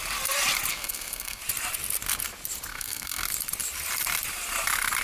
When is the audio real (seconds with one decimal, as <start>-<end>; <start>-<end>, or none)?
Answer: 0.0-0.7; 1.4-2.7; 3.2-5.0